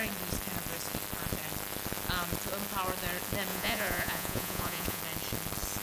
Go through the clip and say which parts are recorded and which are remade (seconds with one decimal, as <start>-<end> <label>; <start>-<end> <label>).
0.0-3.5 recorded; 3.5-5.0 remade; 5.0-5.8 recorded